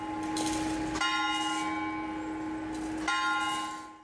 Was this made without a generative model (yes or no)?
yes